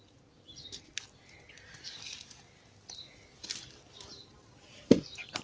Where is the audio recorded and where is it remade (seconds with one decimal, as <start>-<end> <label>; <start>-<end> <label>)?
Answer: 0.0-0.9 remade; 0.9-4.1 recorded; 4.1-5.4 remade